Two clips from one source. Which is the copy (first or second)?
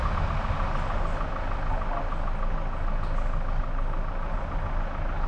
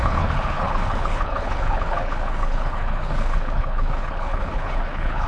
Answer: second